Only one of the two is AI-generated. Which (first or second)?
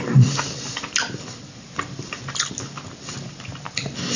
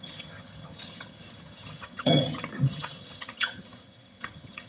second